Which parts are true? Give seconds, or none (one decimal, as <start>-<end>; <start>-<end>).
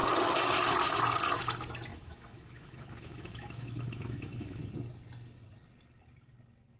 0.0-1.9; 4.6-6.8